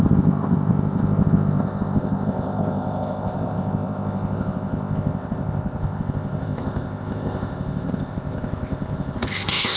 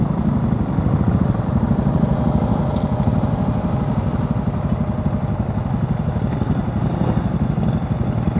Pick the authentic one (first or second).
second